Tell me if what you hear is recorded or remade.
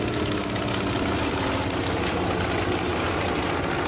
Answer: recorded